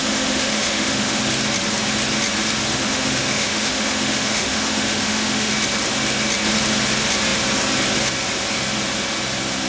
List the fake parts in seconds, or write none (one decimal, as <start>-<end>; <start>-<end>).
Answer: 0.0-1.2; 2.7-5.5